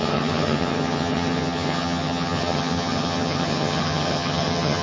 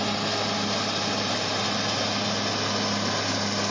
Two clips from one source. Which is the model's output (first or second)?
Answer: first